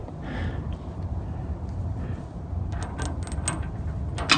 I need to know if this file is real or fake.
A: real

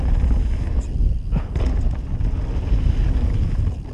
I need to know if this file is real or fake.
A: real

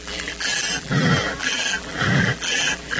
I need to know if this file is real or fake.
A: fake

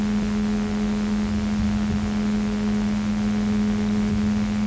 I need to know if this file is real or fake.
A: real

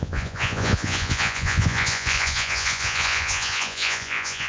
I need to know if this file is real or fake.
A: fake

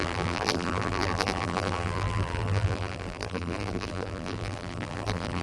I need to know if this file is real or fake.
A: fake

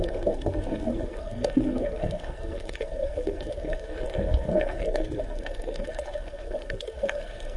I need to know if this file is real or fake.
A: fake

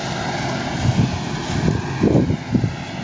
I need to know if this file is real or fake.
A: real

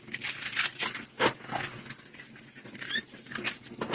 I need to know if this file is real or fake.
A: real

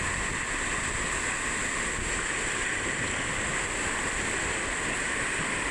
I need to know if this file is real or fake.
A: real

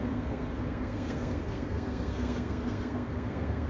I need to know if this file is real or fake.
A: fake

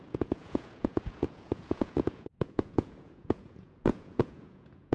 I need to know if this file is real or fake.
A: fake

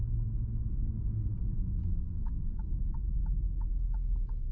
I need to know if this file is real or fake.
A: real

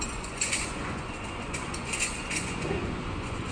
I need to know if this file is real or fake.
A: fake